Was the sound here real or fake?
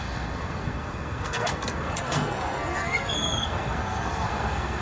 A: fake